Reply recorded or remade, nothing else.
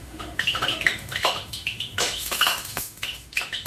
remade